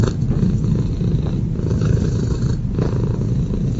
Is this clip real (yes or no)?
yes